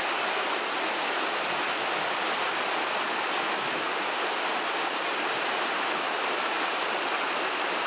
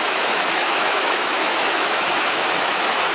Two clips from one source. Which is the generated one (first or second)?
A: second